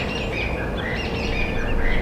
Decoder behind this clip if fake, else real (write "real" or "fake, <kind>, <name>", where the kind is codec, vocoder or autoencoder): real